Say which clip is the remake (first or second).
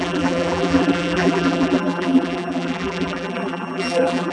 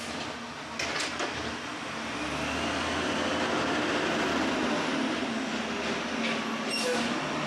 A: first